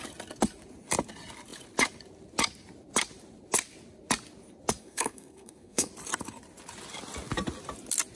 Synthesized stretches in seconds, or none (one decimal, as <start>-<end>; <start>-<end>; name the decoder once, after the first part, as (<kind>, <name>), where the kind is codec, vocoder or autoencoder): 4.8-5.9 (codec, SNAC)